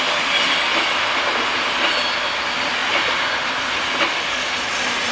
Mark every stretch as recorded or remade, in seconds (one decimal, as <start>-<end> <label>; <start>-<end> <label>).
0.0-0.7 recorded; 0.7-1.7 remade; 1.7-5.1 recorded